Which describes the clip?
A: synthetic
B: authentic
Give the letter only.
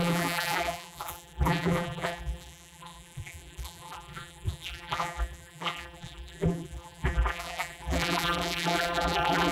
A